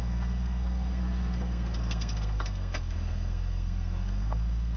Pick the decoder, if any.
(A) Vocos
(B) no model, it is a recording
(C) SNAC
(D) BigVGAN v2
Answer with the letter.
C